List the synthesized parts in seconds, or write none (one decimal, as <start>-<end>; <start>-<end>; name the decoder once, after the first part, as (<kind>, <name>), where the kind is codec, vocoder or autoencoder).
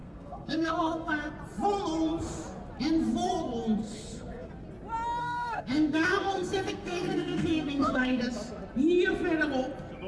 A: 0.0-1.3 (codec, SNAC); 3.8-4.5; 5.2-8.2